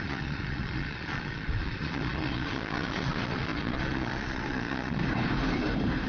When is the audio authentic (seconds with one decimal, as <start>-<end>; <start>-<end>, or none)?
5.0-6.1